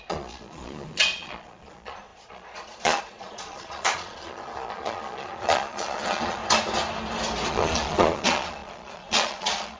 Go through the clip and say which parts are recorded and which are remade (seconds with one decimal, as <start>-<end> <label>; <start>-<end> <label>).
0.0-6.4 remade; 6.4-7.5 recorded; 7.5-9.8 remade